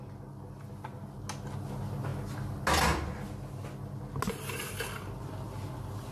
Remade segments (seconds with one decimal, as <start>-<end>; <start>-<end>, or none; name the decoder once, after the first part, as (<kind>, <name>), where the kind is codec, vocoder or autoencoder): none